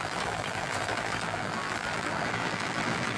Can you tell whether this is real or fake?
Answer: fake